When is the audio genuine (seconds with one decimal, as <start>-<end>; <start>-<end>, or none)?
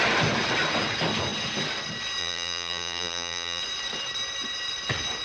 0.0-2.2; 3.6-5.2